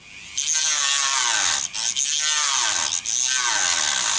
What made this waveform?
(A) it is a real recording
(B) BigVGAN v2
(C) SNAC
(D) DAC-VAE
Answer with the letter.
A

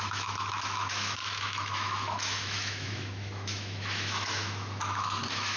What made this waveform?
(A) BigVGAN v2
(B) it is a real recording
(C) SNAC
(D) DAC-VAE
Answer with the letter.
D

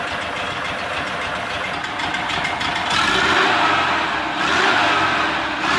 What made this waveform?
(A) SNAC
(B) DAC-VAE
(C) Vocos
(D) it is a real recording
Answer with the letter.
D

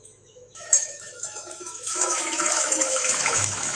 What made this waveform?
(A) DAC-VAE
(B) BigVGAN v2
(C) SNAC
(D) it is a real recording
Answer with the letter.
A